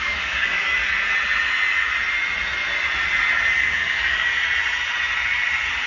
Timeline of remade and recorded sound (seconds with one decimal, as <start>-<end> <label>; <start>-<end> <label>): 0.0-0.8 remade; 0.8-3.5 recorded; 3.5-4.3 remade; 4.3-5.9 recorded